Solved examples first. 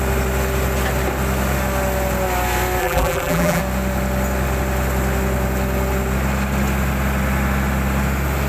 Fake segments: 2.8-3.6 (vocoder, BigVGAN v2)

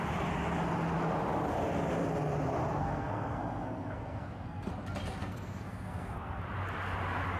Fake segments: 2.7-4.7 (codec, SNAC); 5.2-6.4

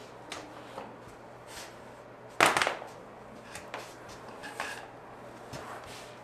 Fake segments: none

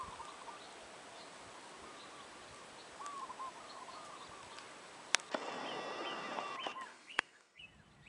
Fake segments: 6.9-7.6 (codec, SNAC)

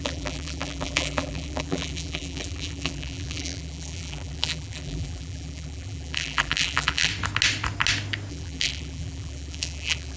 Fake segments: 0.0-7.1 (vocoder, BigVGAN v2); 8.3-10.2